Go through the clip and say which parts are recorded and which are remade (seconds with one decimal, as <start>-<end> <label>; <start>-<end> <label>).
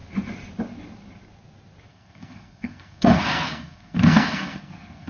0.0-1.9 recorded; 1.9-5.1 remade